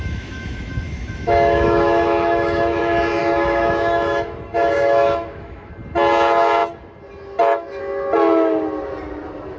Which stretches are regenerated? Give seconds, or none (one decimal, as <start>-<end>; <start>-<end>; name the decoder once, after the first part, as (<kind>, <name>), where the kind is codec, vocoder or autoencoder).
0.0-2.8 (autoencoder, DAC-VAE); 3.2-5.7

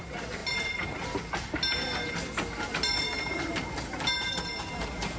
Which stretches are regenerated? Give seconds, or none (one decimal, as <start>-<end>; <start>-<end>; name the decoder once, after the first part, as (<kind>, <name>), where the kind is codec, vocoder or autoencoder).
none

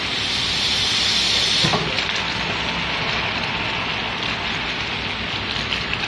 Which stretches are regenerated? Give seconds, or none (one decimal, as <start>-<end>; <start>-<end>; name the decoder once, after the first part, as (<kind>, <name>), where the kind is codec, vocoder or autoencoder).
none

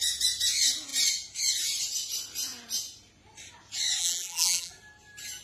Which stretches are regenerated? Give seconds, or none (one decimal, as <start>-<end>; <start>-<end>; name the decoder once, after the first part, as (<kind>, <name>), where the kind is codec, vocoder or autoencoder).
4.0-4.7 (vocoder, BigVGAN v2)

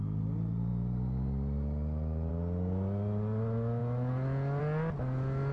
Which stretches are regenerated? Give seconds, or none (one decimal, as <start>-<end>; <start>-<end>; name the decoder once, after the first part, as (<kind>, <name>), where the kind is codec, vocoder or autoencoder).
none

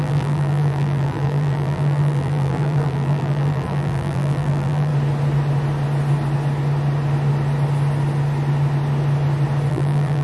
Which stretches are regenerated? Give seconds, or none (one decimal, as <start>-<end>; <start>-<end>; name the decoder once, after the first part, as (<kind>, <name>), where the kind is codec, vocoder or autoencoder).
0.0-4.9 (vocoder, BigVGAN v2); 9.7-10.2

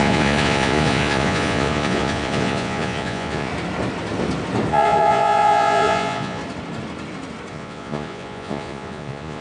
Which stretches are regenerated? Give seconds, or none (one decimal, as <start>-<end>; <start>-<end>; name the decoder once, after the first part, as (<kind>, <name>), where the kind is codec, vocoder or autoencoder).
0.0-3.5 (vocoder, Vocos); 4.7-6.4; 7.5-9.4